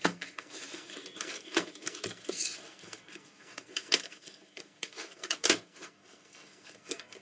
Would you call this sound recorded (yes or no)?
no